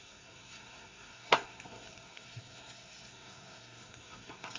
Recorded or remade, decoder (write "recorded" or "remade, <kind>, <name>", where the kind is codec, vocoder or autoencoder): remade, codec, SNAC